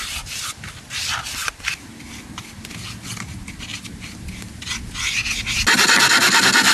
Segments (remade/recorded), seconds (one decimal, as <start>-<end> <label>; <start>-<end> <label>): 0.0-6.7 recorded